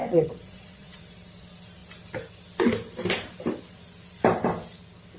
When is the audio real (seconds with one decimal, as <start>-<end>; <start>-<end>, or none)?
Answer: 1.0-5.2